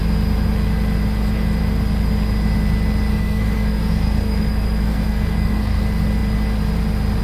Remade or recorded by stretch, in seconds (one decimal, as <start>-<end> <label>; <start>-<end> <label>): 0.0-3.1 recorded; 3.1-5.8 remade; 5.8-7.2 recorded